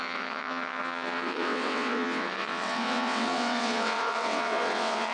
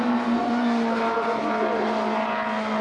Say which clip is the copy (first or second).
first